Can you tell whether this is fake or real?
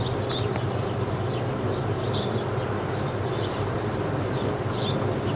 real